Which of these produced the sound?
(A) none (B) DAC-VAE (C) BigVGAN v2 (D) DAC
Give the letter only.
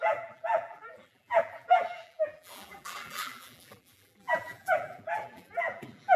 C